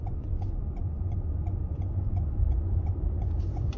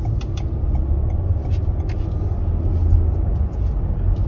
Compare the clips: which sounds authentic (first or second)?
second